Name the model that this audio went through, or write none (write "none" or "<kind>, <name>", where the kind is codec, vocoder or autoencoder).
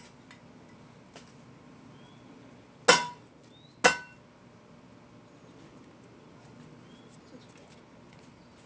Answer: none